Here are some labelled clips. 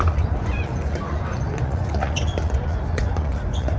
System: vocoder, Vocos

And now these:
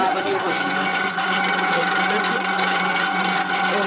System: vocoder, Vocos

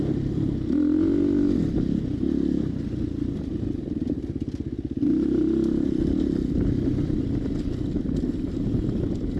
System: none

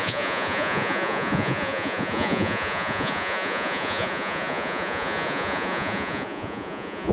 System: vocoder, Vocos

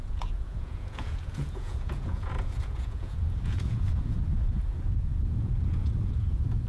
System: vocoder, Vocos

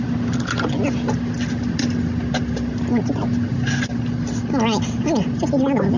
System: none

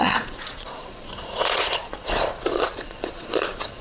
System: vocoder, Vocos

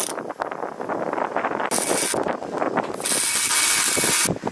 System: none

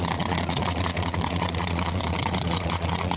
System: vocoder, Vocos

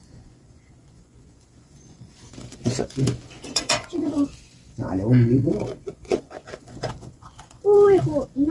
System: vocoder, Vocos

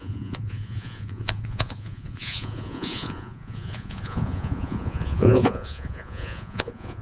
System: vocoder, Vocos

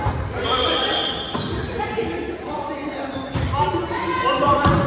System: none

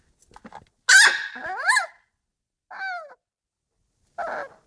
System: none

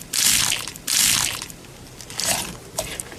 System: none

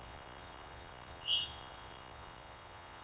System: vocoder, Vocos